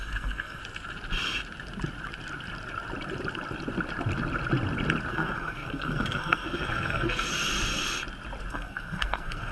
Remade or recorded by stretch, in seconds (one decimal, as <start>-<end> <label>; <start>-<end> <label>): 0.0-0.6 remade; 0.6-5.1 recorded; 5.1-7.3 remade; 7.3-8.5 recorded; 8.5-9.5 remade